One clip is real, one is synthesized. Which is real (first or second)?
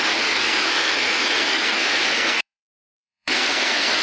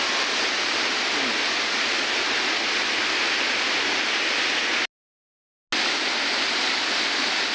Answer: second